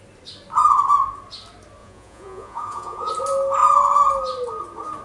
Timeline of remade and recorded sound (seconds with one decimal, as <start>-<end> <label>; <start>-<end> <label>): 0.0-1.8 recorded; 1.8-3.1 remade; 3.1-5.0 recorded